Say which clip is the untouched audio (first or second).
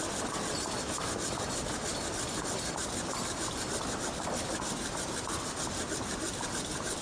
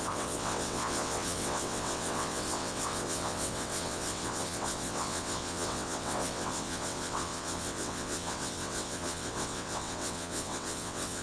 first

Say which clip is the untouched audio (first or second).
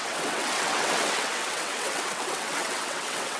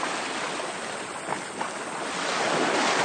second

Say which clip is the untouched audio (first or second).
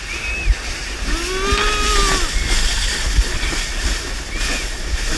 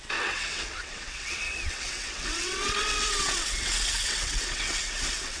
first